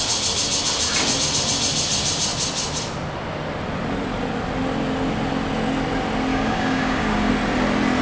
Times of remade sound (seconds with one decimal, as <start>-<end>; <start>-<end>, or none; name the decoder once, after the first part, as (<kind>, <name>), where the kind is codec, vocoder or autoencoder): 6.3-7.3 (codec, DAC)